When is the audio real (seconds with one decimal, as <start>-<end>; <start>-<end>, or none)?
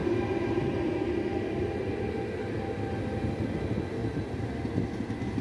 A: 0.0-4.0; 4.5-5.4